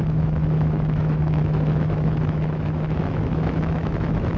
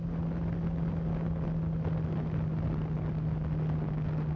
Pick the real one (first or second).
second